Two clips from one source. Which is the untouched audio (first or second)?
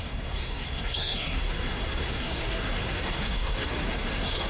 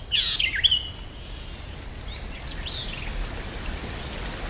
second